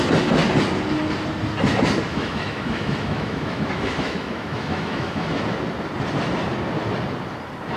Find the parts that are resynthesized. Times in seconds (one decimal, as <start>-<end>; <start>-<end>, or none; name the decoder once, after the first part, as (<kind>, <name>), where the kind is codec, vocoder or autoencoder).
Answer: 2.1-5.4 (autoencoder, DAC-VAE)